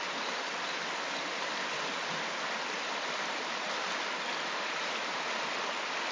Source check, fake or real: real